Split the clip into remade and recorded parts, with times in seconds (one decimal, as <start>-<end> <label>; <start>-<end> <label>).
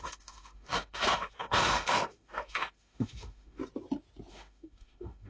0.0-3.6 remade; 3.6-4.3 recorded; 4.3-5.3 remade